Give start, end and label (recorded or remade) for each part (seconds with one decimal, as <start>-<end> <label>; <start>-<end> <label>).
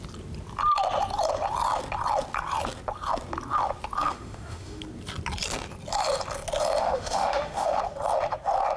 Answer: 0.0-4.1 recorded; 4.1-4.8 remade; 4.8-6.8 recorded; 6.8-7.8 remade; 7.8-8.8 recorded